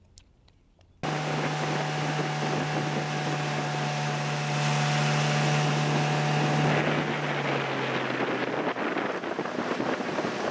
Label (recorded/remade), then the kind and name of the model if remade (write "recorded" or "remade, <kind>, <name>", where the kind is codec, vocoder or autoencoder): recorded